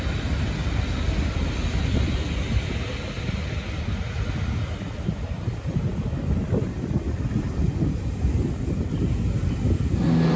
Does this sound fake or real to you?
real